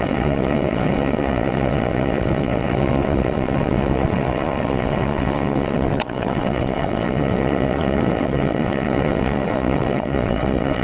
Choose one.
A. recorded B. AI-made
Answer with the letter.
B